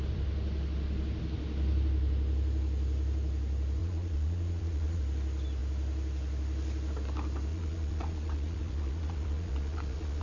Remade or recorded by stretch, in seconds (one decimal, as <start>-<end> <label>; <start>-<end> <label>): 0.0-3.8 recorded; 3.8-5.0 remade; 5.0-7.5 recorded; 7.5-10.2 remade